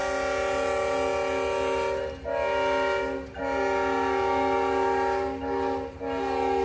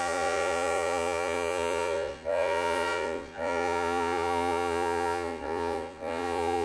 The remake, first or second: second